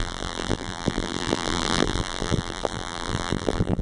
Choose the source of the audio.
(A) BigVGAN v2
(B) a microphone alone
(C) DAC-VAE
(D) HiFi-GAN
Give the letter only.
A